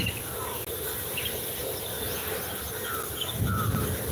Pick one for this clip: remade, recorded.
recorded